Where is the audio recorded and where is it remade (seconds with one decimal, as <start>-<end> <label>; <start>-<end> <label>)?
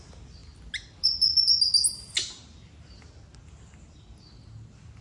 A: 0.0-5.0 recorded